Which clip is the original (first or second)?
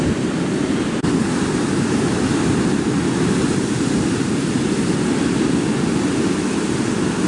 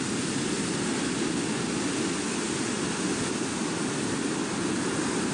second